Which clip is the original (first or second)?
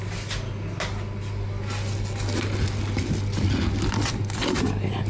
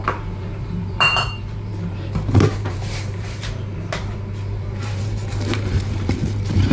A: first